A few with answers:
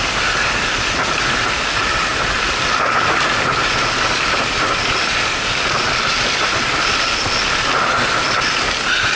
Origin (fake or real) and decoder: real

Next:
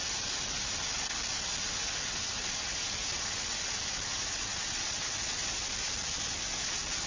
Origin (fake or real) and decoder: real